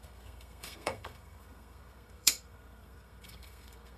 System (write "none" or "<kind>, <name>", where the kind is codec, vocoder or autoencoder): codec, SNAC